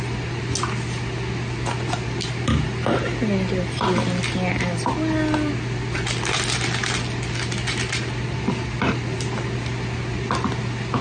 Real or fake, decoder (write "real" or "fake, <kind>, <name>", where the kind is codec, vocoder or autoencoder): real